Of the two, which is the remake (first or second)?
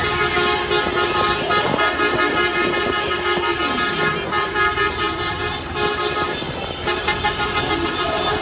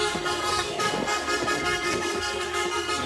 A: second